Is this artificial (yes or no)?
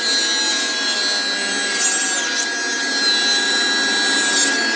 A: no